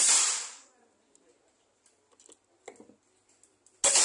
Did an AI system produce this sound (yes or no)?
no